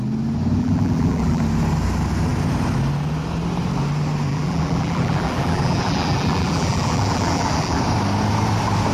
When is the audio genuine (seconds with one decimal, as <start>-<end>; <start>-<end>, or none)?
0.0-0.6; 1.4-4.3; 7.8-8.9